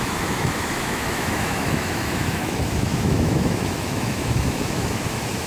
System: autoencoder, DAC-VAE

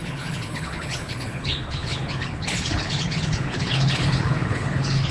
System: codec, HILCodec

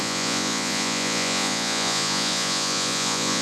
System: vocoder, Vocos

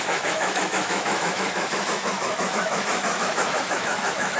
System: autoencoder, DAC-VAE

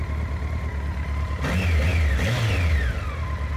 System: none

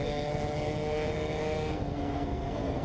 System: codec, SNAC